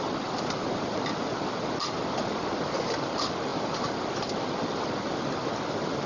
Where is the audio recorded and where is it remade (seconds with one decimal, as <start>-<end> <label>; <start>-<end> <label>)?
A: 0.0-6.1 recorded